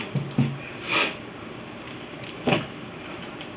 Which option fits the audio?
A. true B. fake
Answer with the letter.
A